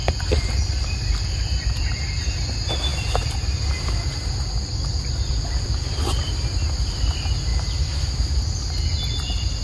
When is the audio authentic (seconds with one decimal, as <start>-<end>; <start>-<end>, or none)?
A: 1.8-9.6